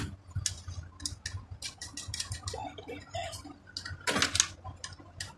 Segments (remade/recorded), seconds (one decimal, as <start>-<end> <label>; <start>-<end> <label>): 0.0-5.4 recorded